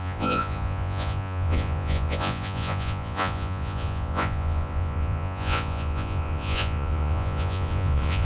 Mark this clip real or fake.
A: fake